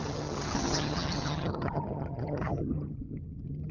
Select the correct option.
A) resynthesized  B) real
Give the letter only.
A